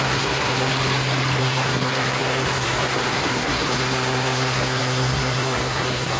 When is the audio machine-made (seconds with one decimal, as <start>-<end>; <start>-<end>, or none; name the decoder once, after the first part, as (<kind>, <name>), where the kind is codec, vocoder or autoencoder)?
0.0-0.7 (codec, SNAC); 1.4-6.2